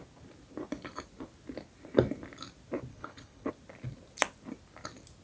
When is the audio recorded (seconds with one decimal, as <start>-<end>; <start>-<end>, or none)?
0.0-2.9; 3.5-5.2